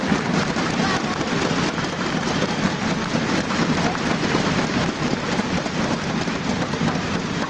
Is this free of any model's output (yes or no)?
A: yes